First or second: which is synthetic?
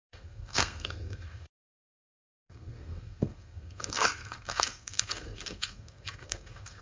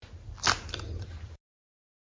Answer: first